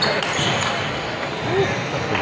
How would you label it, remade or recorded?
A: recorded